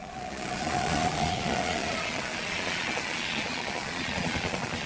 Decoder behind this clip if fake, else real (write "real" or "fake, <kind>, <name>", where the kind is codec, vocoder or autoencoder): fake, vocoder, Vocos